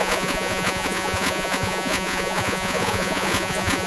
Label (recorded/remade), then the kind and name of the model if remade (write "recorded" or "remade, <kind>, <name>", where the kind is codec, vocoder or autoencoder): remade, vocoder, Vocos